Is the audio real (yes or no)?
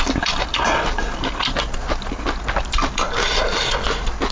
yes